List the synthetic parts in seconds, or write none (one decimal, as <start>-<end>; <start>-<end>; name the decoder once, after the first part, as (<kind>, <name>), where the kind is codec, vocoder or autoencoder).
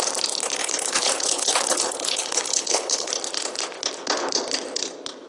0.6-3.1 (codec, HILCodec)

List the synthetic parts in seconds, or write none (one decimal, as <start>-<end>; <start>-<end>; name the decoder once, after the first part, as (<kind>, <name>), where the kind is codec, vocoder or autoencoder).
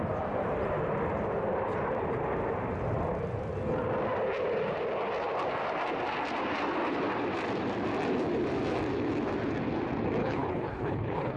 10.2-11.4 (codec, HILCodec)